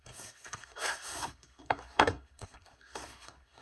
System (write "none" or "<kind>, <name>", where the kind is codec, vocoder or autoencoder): codec, SNAC